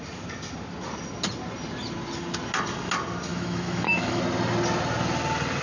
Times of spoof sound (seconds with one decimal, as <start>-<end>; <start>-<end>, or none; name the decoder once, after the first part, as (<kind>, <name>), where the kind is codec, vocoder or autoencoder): 3.3-4.2 (autoencoder, DAC-VAE)